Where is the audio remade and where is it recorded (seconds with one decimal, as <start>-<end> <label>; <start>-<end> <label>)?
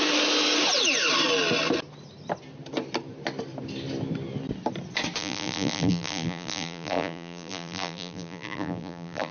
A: 0.0-5.2 recorded; 5.2-9.3 remade